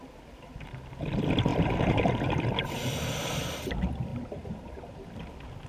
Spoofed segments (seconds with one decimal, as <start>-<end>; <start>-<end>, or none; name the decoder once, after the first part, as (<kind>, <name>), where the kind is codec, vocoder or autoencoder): 1.5-2.7 (vocoder, BigVGAN v2); 4.1-5.1

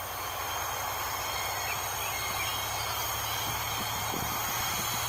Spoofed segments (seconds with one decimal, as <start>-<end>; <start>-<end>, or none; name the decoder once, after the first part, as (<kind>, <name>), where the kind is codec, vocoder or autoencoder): none

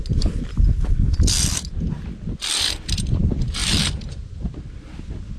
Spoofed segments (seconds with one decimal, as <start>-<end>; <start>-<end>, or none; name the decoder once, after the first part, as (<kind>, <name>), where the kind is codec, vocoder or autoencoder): none

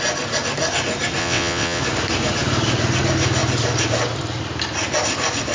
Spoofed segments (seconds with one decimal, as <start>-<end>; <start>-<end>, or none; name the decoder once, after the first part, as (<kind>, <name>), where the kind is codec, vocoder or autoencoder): 1.2-1.8 (vocoder, WaveNeXt)

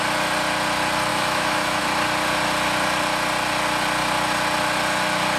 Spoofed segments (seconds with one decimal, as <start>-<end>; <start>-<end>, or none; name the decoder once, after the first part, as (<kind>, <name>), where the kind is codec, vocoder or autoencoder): 1.1-1.8 (autoencoder, DAC-VAE)

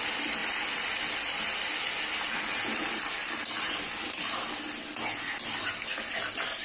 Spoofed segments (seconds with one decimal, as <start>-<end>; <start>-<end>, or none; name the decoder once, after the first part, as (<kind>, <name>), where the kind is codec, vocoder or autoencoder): none

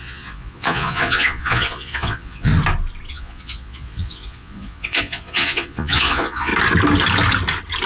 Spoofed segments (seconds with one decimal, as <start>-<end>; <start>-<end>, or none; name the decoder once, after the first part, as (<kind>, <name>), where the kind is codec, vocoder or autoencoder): 0.0-2.5 (vocoder, Vocos); 3.1-6.5

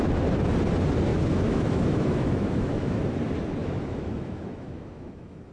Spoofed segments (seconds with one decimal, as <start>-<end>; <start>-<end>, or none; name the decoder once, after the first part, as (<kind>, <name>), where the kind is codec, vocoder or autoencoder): 1.1-3.0 (autoencoder, DAC-VAE); 3.6-5.5